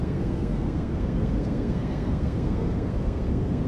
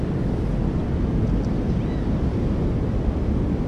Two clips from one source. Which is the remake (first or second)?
first